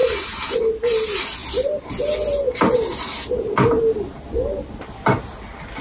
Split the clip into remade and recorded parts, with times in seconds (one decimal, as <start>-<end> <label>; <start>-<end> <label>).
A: 0.0-0.6 remade; 0.6-5.8 recorded